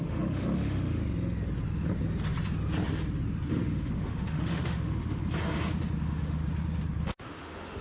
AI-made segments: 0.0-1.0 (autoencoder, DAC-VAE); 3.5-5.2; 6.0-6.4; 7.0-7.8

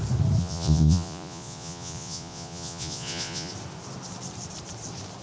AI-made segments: 0.4-3.5 (vocoder, Vocos)

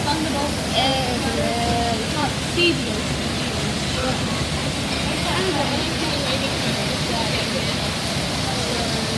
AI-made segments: 0.9-3.0 (vocoder, BigVGAN v2); 6.8-8.1

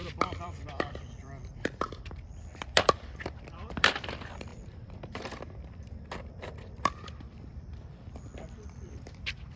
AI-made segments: 0.0-9.6 (vocoder, BigVGAN v2)

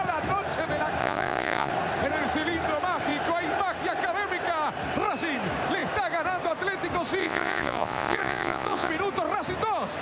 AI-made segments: 1.0-1.7 (vocoder, Vocos); 7.2-8.9

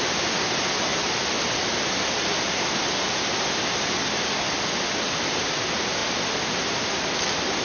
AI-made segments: none